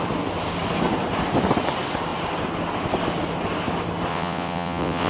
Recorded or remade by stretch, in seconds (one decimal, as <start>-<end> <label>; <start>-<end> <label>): 0.0-4.1 recorded; 4.1-5.1 remade